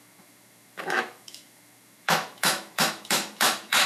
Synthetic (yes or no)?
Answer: yes